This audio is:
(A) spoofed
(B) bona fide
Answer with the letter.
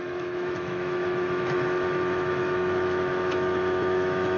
A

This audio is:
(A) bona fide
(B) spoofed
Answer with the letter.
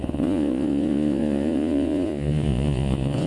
B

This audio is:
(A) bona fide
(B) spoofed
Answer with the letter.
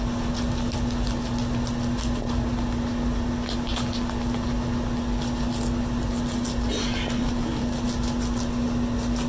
A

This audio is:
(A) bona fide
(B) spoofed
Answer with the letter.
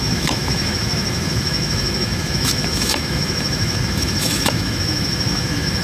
B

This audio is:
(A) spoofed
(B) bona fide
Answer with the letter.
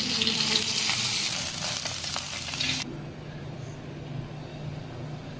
A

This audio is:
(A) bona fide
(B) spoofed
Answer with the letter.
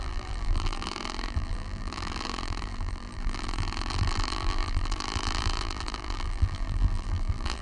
B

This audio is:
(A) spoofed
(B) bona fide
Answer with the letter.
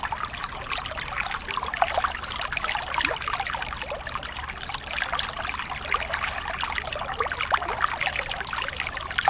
B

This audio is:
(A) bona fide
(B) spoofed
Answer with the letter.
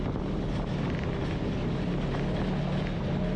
A